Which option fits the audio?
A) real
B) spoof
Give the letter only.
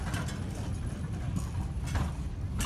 A